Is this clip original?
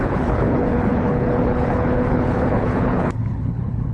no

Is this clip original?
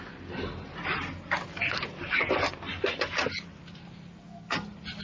yes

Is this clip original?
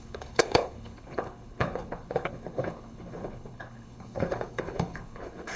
no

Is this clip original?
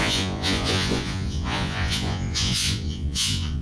no